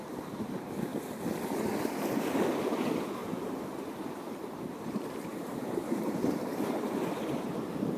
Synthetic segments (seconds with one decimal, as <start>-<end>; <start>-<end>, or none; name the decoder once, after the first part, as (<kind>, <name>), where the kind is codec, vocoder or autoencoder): 0.0-0.9 (vocoder, BigVGAN v2); 2.2-8.0

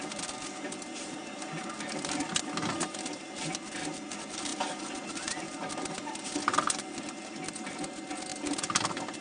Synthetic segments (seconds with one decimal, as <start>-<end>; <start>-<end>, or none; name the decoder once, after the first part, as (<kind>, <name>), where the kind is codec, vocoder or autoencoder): none

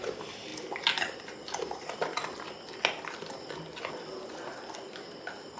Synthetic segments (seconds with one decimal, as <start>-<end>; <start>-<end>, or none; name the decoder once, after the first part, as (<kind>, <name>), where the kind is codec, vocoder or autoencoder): none

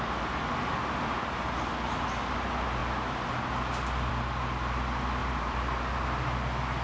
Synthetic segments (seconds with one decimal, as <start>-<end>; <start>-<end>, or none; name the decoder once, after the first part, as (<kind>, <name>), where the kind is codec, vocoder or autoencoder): 5.2-5.9 (vocoder, BigVGAN v2)